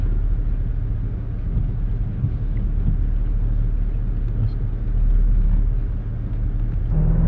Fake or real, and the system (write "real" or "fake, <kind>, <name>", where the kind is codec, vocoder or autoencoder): real